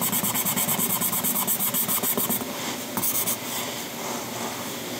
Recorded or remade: recorded